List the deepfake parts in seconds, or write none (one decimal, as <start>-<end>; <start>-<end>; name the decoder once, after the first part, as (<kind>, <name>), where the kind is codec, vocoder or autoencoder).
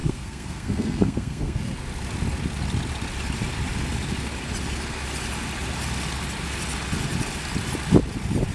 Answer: 0.0-1.6 (codec, SNAC)